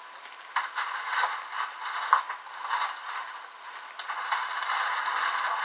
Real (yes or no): yes